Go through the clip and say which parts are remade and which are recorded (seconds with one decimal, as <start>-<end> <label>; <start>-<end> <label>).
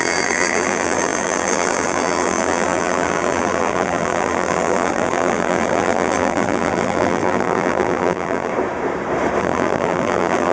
0.0-8.5 remade; 8.5-9.4 recorded; 9.4-10.5 remade